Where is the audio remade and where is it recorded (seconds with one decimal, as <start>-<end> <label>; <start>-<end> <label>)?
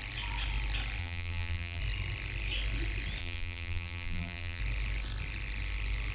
0.0-1.0 recorded; 1.0-1.8 remade; 1.8-3.2 recorded; 3.2-4.6 remade; 4.6-6.1 recorded